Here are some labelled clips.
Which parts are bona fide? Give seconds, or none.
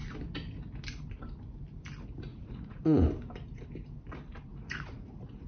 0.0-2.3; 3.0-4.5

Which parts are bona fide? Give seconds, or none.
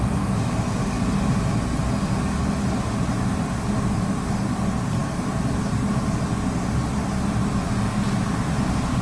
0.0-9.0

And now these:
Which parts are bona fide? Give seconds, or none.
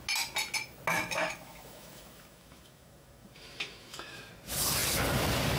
0.0-0.9; 4.3-5.6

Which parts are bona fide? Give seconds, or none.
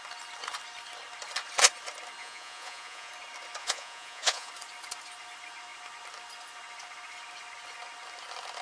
0.0-2.2; 3.1-3.6; 4.5-8.6